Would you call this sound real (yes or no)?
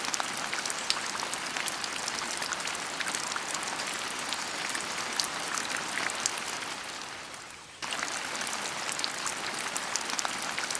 yes